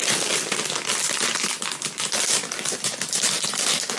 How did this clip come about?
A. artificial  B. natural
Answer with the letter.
B